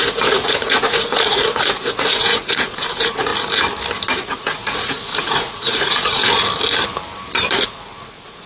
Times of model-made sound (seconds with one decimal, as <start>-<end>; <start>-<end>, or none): 0.0-3.3; 4.2-6.2; 7.5-8.5